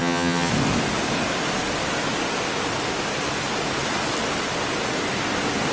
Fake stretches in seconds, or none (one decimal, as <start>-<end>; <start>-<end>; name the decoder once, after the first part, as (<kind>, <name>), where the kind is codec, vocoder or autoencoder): 0.0-0.5 (vocoder, HiFi-GAN)